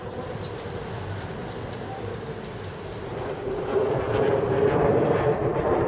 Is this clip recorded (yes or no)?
no